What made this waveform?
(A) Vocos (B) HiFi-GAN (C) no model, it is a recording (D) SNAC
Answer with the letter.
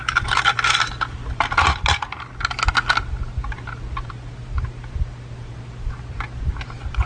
C